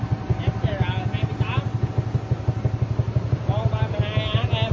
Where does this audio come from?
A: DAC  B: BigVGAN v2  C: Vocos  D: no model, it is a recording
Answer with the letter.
D